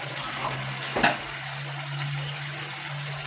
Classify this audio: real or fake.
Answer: real